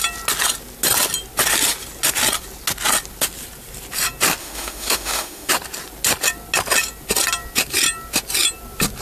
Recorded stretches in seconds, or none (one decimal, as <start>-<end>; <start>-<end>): 0.0-4.4; 5.5-9.0